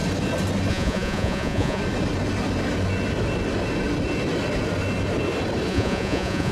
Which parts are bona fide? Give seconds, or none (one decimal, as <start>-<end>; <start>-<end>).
0.0-0.7; 1.8-5.7